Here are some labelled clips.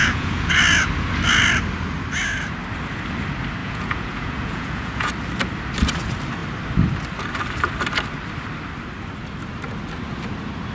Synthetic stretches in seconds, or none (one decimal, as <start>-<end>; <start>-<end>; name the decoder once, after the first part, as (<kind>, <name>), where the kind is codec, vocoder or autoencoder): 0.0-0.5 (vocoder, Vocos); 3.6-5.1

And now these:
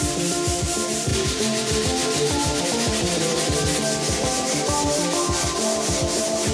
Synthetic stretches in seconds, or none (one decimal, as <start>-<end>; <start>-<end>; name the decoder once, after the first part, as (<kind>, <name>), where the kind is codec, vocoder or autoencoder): 0.0-6.5 (vocoder, BigVGAN v2)

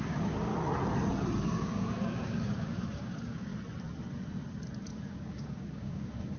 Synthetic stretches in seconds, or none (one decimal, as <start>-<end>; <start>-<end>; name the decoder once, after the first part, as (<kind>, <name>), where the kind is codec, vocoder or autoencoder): 0.0-0.5 (codec, DAC); 1.4-3.5; 4.9-6.4

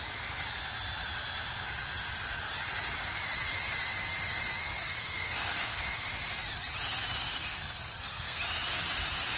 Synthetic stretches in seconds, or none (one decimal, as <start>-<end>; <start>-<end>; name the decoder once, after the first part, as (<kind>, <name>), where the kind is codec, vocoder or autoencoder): 4.8-6.1 (codec, SNAC); 7.3-8.4